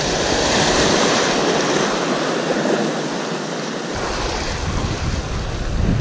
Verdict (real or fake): real